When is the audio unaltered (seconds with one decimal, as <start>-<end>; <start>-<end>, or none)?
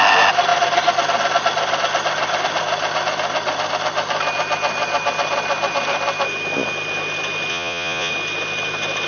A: 0.0-7.5; 8.1-9.1